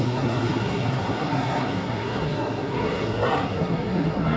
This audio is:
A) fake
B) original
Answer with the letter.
A